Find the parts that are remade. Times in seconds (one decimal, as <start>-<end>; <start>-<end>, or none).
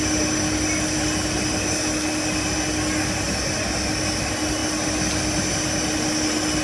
none